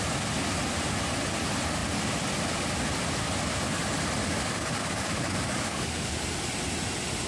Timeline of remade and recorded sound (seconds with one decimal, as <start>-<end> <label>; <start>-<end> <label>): 0.0-4.2 recorded; 4.2-6.2 remade; 6.2-7.3 recorded